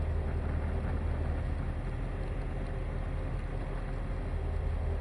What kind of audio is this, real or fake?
real